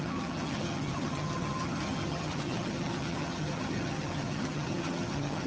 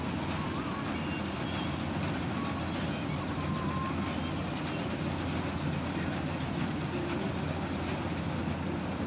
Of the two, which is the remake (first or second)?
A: first